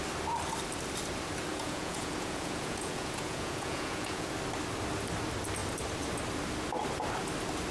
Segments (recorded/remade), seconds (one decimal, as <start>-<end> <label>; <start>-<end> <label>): 0.0-1.5 recorded; 1.5-4.3 remade; 4.3-7.7 recorded